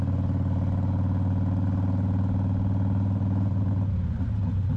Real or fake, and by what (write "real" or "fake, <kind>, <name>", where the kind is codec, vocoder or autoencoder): real